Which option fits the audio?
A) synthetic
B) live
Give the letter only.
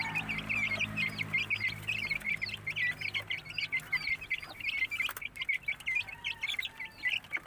B